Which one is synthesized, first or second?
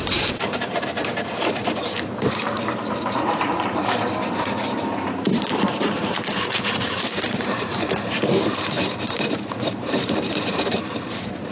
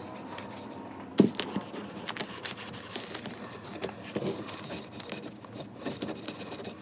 first